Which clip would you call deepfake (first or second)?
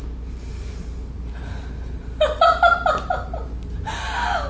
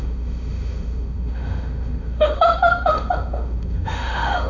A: second